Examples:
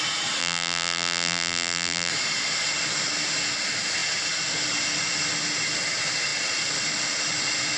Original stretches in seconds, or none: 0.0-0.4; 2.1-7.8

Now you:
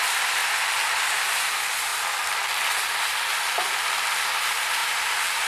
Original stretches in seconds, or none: 0.0-4.8